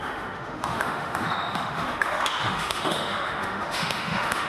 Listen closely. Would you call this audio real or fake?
fake